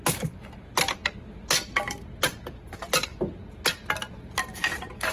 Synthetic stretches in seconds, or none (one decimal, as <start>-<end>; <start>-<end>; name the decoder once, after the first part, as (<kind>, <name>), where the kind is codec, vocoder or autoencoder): none